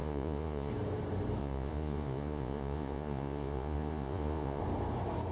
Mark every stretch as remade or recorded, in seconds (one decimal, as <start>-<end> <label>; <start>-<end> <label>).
0.0-0.7 remade; 0.7-1.4 recorded; 1.4-4.6 remade; 4.6-5.3 recorded